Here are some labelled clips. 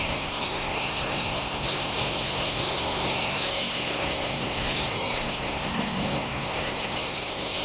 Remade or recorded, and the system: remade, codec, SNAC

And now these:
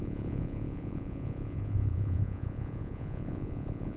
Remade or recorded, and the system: remade, vocoder, Vocos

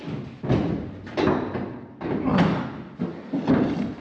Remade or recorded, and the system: recorded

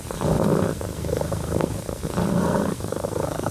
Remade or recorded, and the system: remade, codec, SNAC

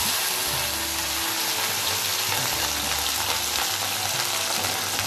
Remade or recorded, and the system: recorded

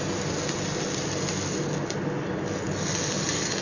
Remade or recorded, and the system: recorded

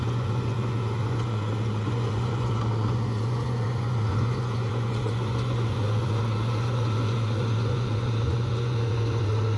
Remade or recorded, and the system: remade, vocoder, Vocos